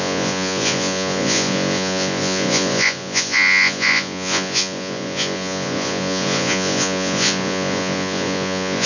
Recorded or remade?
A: remade